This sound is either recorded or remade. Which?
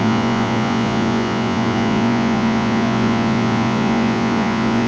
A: remade